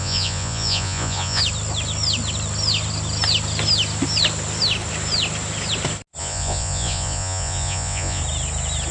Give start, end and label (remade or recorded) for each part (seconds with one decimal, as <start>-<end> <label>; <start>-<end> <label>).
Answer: 0.0-1.4 remade; 1.4-6.2 recorded; 6.2-8.2 remade; 8.2-8.9 recorded